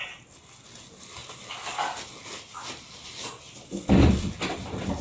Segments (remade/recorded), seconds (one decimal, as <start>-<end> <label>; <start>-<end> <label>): 0.0-5.0 recorded